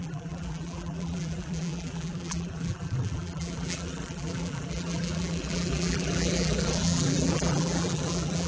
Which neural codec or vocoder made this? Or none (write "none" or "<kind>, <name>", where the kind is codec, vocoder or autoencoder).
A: vocoder, BigVGAN v2